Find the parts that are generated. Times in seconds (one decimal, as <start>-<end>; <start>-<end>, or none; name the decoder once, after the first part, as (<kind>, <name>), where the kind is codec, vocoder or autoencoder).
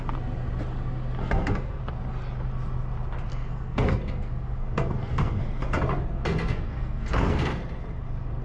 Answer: 1.2-1.8 (codec, SNAC); 3.3-5.4; 6.1-7.6